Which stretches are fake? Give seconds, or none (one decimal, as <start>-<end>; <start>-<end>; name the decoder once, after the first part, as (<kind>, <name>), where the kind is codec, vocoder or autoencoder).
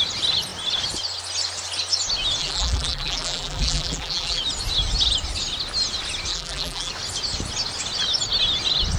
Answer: 2.4-4.4 (vocoder, BigVGAN v2); 6.3-6.9